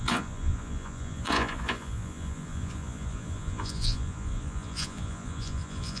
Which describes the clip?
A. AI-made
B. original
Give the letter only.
A